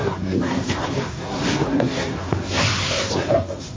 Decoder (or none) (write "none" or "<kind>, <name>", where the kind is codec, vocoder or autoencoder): codec, SNAC